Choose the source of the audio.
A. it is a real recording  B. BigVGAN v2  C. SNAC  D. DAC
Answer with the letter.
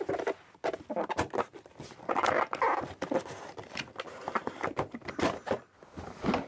A